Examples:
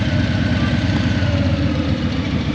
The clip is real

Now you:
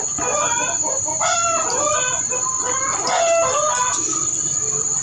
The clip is real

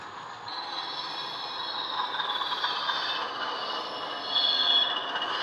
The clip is real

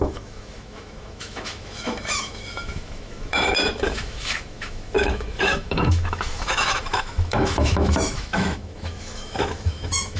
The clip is fake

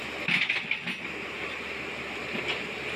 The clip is real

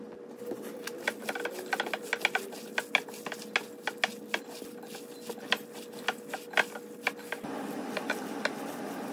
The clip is real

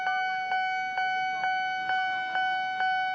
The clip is real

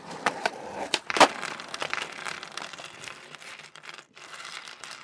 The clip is fake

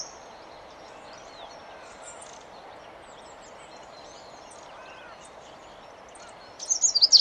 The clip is real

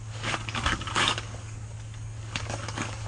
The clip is fake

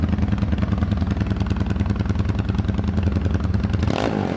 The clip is real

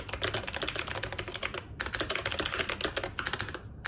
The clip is real